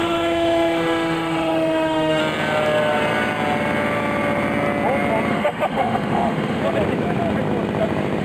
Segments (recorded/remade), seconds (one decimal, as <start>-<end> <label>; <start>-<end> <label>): 0.0-2.2 remade; 2.2-5.3 recorded; 5.3-6.6 remade; 6.6-8.2 recorded